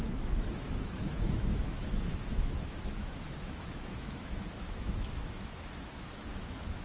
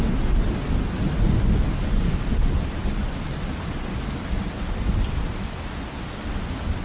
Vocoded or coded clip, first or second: first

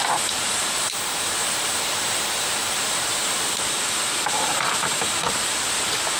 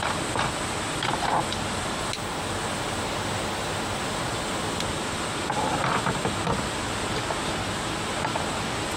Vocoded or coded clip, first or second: first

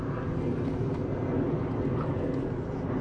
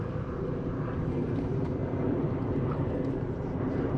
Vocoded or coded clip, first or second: second